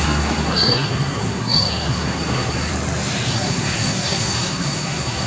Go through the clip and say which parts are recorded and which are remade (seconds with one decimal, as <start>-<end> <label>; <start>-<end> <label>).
0.0-2.7 remade; 2.7-3.3 recorded; 3.3-5.3 remade